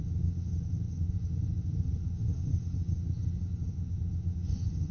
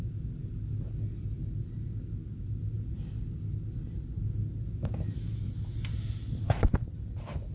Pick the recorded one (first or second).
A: second